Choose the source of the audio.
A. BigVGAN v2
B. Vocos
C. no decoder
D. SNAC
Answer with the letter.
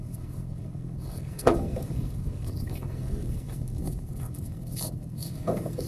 D